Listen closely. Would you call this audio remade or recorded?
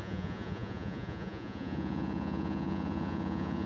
remade